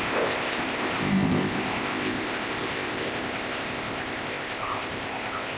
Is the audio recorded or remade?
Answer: remade